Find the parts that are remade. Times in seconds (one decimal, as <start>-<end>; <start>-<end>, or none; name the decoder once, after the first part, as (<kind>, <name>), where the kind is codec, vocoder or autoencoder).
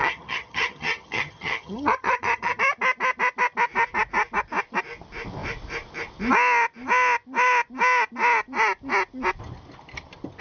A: 0.0-2.5 (vocoder, HiFi-GAN)